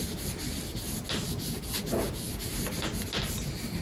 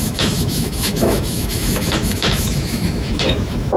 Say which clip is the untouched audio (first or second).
first